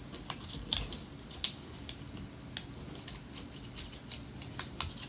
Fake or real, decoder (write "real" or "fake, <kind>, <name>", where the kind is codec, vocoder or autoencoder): real